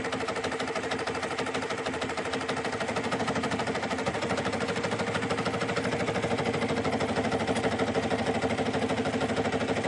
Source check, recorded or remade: recorded